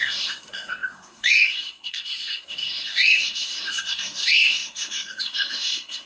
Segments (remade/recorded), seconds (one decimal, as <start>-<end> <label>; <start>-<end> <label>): 0.0-6.1 remade